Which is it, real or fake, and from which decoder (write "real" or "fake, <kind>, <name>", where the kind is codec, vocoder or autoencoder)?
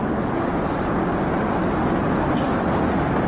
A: real